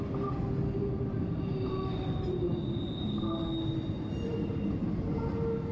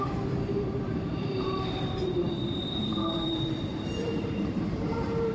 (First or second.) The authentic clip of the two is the first